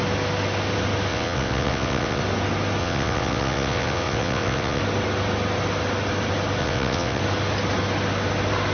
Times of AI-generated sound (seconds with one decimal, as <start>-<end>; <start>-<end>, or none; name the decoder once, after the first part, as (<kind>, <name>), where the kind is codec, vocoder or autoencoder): 1.1-2.2 (vocoder, WaveNeXt); 2.8-4.8; 6.6-7.2